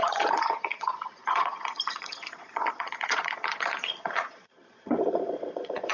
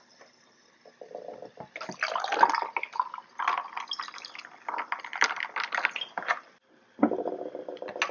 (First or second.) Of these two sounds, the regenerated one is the first